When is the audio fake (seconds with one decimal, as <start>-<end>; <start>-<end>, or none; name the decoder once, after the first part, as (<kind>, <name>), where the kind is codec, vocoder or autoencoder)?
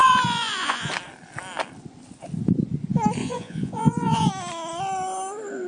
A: 0.0-0.9 (vocoder, Vocos); 3.2-4.3